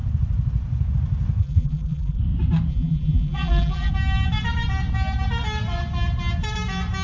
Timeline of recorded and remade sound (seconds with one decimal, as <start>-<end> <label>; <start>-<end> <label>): 0.0-1.4 recorded; 1.4-2.2 remade; 2.2-2.7 recorded; 2.7-3.9 remade; 3.9-7.0 recorded